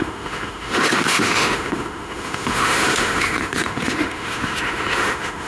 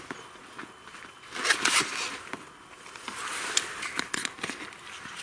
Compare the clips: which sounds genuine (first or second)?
second